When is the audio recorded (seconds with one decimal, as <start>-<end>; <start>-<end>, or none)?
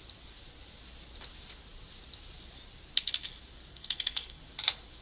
0.0-3.7; 4.4-5.0